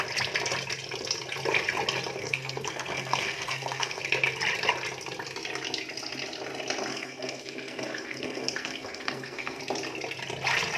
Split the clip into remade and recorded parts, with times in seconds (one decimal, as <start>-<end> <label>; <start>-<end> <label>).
0.0-2.2 recorded; 2.2-4.0 remade; 4.0-6.9 recorded; 6.9-9.6 remade; 9.6-10.8 recorded